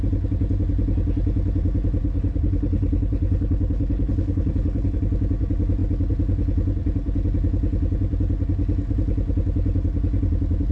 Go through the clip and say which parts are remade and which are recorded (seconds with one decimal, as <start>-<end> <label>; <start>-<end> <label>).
0.0-2.0 recorded; 2.0-5.0 remade; 5.0-10.7 recorded